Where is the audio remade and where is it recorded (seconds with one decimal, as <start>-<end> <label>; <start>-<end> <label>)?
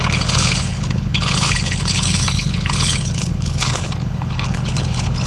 0.0-5.3 remade